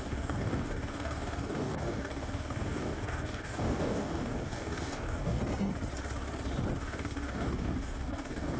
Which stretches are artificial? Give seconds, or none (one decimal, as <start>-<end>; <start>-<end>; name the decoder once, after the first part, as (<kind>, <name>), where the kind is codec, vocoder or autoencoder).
0.0-5.4 (codec, DAC); 6.8-8.6